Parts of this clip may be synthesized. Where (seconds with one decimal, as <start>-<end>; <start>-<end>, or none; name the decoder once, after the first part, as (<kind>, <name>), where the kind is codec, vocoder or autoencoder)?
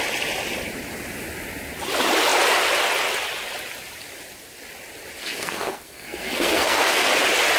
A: 5.2-7.1 (codec, SNAC)